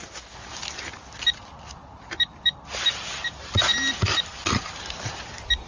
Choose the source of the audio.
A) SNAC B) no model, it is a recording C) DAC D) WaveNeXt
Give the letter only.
B